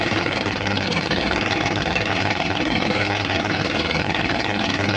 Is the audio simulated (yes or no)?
yes